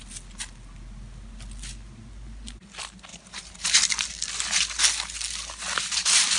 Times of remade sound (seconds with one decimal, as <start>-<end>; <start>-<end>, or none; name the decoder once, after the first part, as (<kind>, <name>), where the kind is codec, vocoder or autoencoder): 3.1-4.1 (vocoder, BigVGAN v2)